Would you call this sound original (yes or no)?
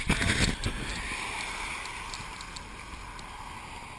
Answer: yes